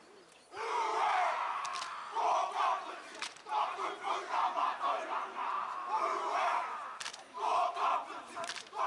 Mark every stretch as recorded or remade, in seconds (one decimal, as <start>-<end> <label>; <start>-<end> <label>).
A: 0.0-1.7 remade; 1.7-2.9 recorded; 2.9-8.9 remade